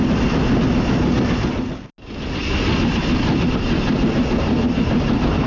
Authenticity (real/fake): real